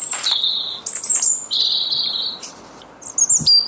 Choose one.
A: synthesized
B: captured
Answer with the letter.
B